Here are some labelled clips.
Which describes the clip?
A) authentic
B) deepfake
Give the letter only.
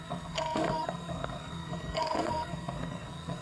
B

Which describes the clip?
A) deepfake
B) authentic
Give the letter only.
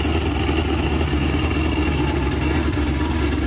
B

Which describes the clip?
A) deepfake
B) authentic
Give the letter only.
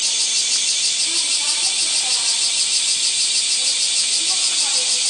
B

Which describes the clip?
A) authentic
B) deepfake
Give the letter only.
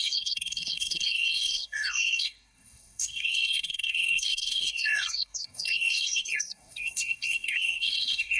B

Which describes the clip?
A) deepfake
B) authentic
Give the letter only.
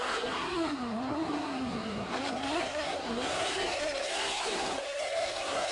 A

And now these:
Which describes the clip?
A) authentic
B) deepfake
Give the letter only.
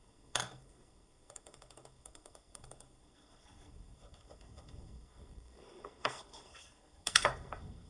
B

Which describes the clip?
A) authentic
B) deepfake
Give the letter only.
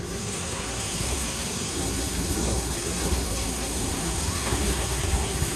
B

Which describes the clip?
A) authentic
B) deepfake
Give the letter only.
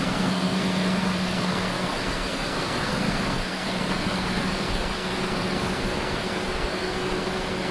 B